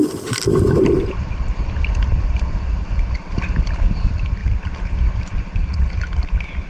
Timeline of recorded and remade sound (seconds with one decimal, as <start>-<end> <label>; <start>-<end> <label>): 0.0-6.7 recorded